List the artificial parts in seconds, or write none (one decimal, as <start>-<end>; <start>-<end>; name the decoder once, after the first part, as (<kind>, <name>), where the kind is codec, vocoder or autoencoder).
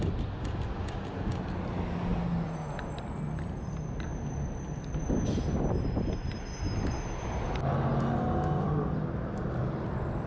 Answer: none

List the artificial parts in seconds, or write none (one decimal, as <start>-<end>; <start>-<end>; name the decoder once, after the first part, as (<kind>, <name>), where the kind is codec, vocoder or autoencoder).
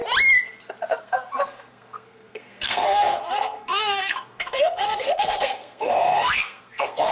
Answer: 1.0-7.1 (codec, SNAC)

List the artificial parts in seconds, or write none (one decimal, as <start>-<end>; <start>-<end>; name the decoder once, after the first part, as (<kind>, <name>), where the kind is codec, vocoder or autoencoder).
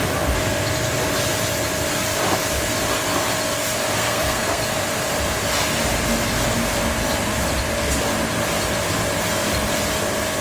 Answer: 4.0-4.6 (codec, SNAC)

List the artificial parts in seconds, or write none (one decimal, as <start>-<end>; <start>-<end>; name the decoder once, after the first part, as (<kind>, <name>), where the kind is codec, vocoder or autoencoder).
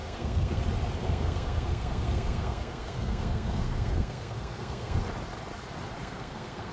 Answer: 0.0-0.6 (codec, SNAC); 1.0-5.0; 6.0-6.7